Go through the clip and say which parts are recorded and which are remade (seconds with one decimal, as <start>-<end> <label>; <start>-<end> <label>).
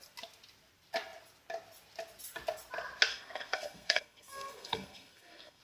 0.0-3.1 recorded; 3.1-5.6 remade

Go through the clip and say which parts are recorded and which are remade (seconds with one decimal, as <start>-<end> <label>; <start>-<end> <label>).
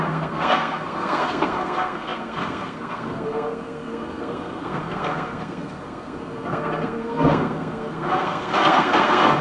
0.0-9.4 remade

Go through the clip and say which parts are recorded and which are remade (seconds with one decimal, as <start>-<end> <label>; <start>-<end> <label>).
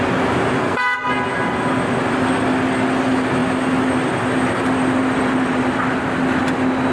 0.0-0.6 recorded; 0.6-1.1 remade; 1.1-6.9 recorded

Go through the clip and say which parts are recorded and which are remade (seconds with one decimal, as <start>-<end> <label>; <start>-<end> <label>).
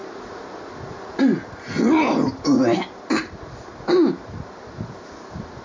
0.0-5.6 recorded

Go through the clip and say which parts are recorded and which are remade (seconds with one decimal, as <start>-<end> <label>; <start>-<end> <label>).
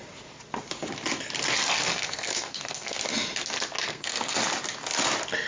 0.0-1.9 recorded; 1.9-3.0 remade; 3.0-3.9 recorded; 3.9-4.4 remade; 4.4-5.5 recorded